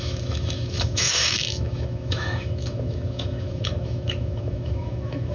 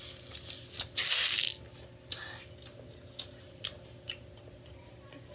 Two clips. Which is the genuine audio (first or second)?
second